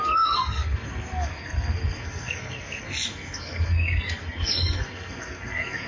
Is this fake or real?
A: fake